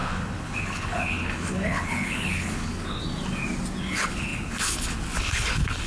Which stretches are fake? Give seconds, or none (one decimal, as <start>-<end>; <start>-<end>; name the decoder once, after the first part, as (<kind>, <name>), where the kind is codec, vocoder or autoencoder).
0.0-3.0 (codec, HILCodec); 3.8-5.9